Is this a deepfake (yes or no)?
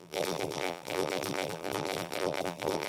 yes